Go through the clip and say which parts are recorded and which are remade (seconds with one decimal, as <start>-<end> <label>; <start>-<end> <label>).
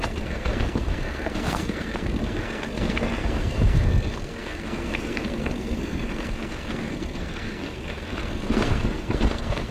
0.0-9.7 remade